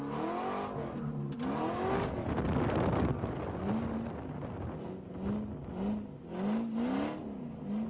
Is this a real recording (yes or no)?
yes